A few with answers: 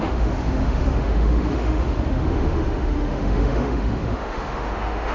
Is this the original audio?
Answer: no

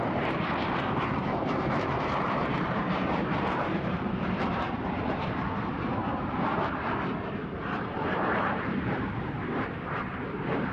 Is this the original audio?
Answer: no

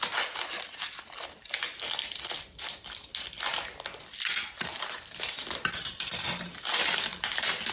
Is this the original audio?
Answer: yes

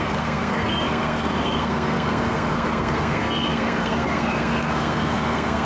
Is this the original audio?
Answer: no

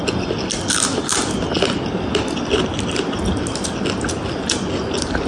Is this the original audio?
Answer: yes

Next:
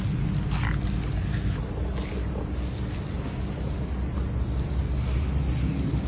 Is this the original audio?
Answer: yes